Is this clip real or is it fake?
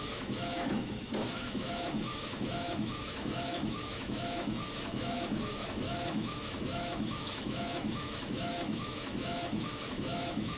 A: fake